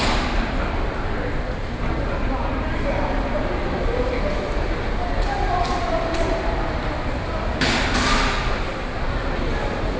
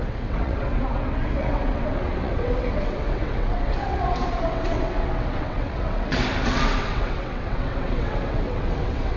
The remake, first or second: second